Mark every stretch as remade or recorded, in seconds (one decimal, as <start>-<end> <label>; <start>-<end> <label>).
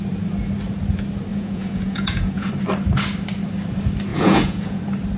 0.0-1.3 recorded; 1.3-2.5 remade; 2.5-4.1 recorded; 4.1-4.8 remade; 4.8-5.2 recorded